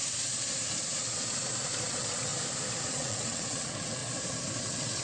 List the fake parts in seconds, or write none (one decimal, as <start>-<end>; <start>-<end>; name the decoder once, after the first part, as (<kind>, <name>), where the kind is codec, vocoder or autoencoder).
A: 1.9-2.3 (vocoder, WaveNeXt); 2.9-4.0; 4.6-5.0